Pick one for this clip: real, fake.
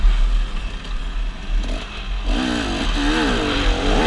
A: real